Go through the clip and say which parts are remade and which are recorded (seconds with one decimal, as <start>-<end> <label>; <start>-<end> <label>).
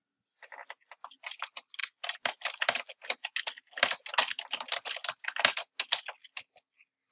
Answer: 0.0-7.1 recorded